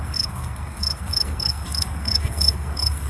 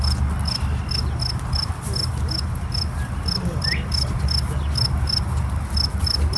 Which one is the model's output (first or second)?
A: first